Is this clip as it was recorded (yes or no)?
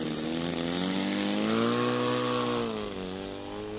yes